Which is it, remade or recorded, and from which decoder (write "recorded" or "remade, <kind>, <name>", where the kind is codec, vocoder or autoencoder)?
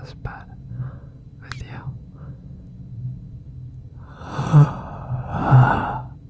recorded